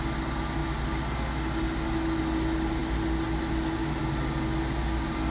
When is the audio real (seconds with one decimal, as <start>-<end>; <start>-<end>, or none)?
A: 0.0-5.3